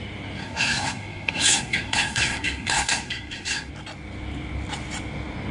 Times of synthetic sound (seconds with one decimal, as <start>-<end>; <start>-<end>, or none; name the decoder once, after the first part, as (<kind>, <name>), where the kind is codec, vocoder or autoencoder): 0.4-3.7 (codec, SNAC)